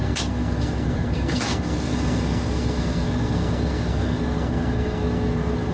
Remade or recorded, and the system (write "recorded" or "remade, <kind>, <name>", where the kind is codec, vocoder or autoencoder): remade, codec, SNAC